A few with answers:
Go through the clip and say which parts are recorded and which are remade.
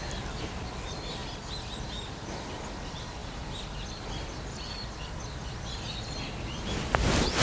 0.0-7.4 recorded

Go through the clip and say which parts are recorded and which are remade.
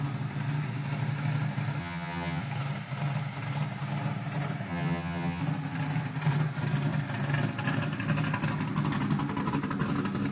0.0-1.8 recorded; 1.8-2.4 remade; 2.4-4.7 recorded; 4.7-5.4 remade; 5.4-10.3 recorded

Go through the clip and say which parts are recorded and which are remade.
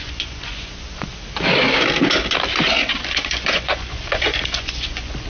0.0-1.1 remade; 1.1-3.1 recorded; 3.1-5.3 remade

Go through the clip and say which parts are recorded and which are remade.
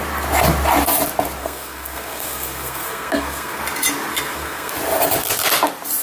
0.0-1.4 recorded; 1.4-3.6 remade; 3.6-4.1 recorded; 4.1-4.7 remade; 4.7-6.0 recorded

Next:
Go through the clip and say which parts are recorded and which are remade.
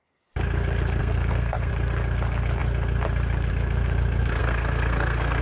0.0-1.0 recorded; 1.0-1.7 remade; 1.7-4.4 recorded; 4.4-5.4 remade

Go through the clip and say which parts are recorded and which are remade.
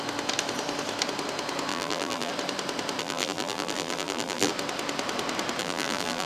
0.0-1.7 recorded; 1.7-2.3 remade; 2.3-3.0 recorded; 3.0-4.5 remade; 4.5-5.6 recorded; 5.6-6.3 remade